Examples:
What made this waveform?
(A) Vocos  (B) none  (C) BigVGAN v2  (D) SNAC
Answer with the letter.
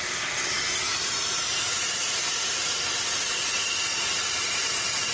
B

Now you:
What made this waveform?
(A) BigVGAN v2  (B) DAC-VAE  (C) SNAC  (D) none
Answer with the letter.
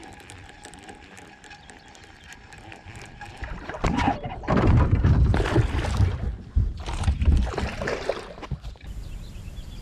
A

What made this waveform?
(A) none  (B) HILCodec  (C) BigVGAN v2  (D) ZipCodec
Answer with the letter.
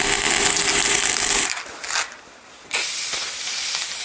A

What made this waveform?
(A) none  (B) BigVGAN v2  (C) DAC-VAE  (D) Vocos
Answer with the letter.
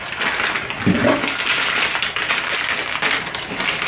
A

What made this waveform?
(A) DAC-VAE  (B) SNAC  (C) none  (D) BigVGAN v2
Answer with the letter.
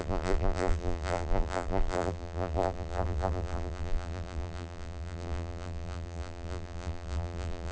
D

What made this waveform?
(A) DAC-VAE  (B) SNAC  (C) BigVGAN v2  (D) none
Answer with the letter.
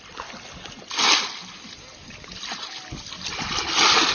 D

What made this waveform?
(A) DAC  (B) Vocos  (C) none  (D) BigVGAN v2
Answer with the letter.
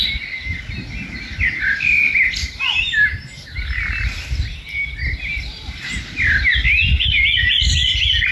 C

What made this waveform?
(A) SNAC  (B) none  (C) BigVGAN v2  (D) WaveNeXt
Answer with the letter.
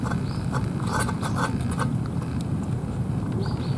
C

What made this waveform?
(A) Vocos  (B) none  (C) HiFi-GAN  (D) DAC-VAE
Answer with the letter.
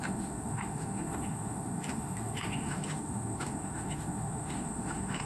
D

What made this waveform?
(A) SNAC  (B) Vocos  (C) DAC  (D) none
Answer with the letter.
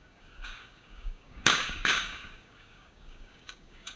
C